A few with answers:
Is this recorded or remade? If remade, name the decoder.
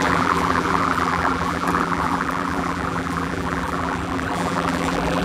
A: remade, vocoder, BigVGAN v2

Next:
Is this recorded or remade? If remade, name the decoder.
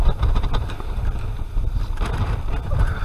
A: recorded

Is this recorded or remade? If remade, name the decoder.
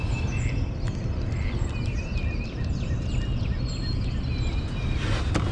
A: recorded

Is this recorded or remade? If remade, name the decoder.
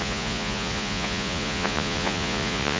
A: remade, vocoder, Vocos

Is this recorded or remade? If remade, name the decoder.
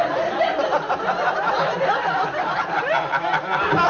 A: remade, vocoder, BigVGAN v2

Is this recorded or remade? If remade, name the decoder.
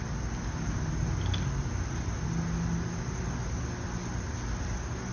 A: recorded